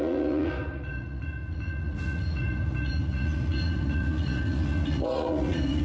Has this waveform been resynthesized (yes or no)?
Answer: yes